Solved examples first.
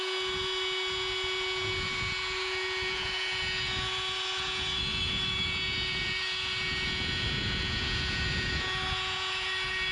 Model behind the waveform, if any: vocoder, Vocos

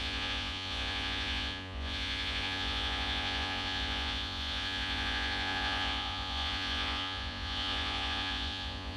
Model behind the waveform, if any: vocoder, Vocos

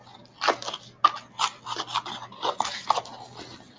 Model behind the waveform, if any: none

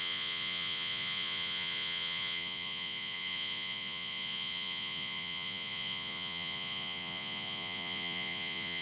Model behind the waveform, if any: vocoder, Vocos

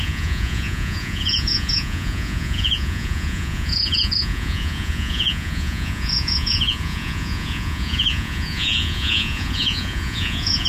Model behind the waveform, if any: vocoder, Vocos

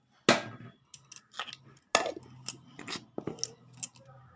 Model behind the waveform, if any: none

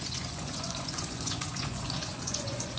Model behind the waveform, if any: vocoder, Vocos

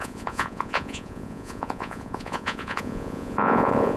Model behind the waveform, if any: vocoder, Vocos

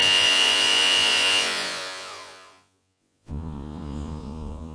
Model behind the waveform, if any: vocoder, Vocos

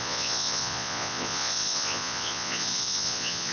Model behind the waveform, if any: vocoder, Vocos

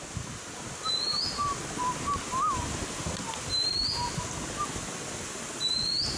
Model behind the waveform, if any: none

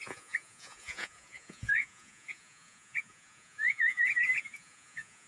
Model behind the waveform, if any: vocoder, Vocos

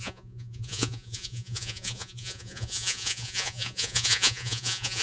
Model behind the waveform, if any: vocoder, Vocos